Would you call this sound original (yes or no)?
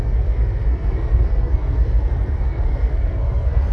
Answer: no